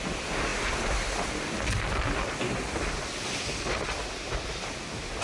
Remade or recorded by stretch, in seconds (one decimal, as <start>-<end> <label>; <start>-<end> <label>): 0.0-5.2 recorded